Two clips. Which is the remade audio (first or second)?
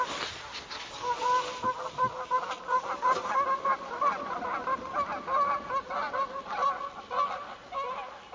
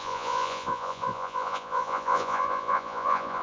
second